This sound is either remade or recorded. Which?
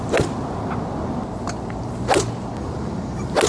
recorded